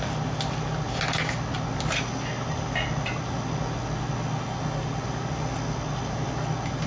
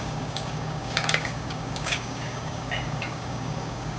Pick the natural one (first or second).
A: first